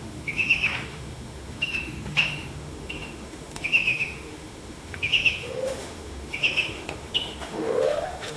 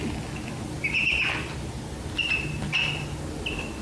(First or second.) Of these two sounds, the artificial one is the first